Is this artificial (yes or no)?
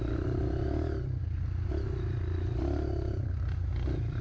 no